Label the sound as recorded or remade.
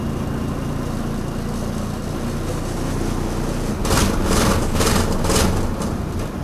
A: recorded